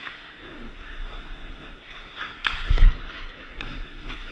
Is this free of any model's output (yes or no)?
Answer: no